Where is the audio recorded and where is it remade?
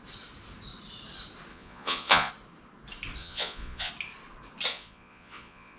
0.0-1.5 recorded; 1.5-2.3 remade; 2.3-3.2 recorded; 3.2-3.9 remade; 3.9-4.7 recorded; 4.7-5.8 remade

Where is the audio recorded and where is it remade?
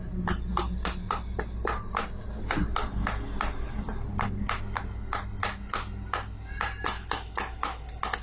0.0-8.2 recorded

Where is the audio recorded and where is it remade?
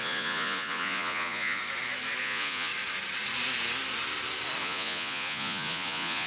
0.0-1.6 remade; 1.6-2.2 recorded; 2.2-2.7 remade; 2.7-4.6 recorded; 4.6-6.3 remade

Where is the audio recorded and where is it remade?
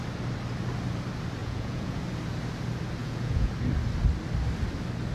0.0-1.4 recorded; 1.4-2.0 remade; 2.0-3.0 recorded; 3.0-3.5 remade; 3.5-5.1 recorded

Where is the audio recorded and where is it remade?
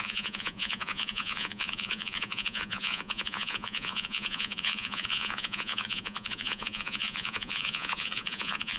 0.0-8.8 remade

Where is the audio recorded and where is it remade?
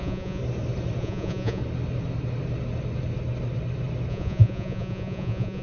0.0-0.4 remade; 0.4-1.0 recorded; 1.0-1.6 remade; 1.6-4.1 recorded; 4.1-5.6 remade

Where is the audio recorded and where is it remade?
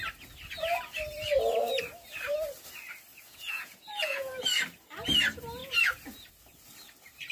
0.0-3.1 recorded; 3.1-4.3 remade; 4.3-7.3 recorded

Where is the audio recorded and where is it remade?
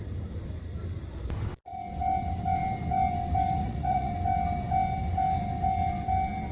0.0-3.6 recorded; 3.6-4.1 remade; 4.1-6.5 recorded